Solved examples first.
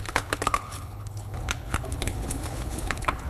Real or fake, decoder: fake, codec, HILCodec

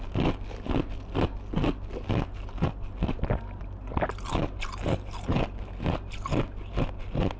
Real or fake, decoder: real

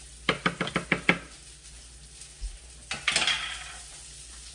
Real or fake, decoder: real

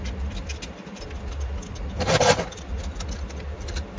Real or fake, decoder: real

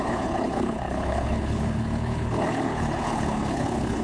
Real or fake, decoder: fake, codec, HILCodec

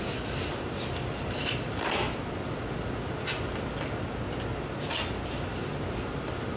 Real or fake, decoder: real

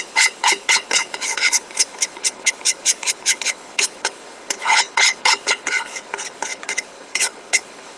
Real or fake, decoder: fake, codec, HILCodec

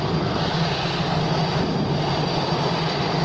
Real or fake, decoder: real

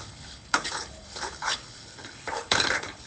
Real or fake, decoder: fake, codec, HILCodec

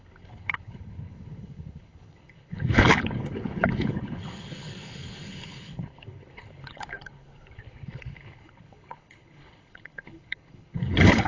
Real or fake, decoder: fake, codec, HILCodec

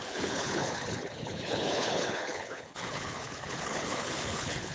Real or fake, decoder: fake, codec, HILCodec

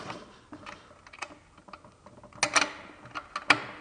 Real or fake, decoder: real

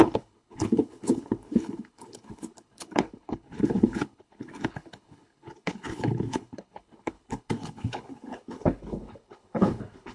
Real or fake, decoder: fake, codec, HILCodec